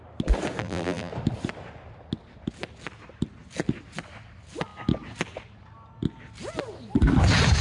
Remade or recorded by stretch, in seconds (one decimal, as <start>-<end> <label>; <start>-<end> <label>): 0.0-0.6 recorded; 0.6-1.1 remade; 1.1-7.6 recorded